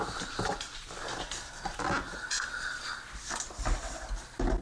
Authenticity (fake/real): real